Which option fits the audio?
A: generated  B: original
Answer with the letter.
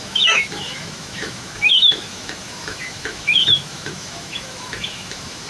A